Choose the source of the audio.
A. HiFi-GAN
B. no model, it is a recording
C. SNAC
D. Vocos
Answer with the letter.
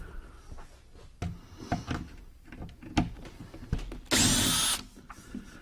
B